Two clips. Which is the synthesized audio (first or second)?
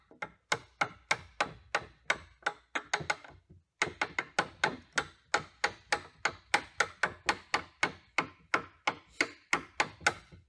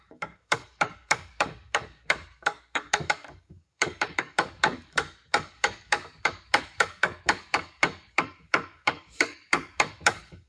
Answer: second